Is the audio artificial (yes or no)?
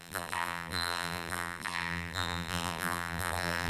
yes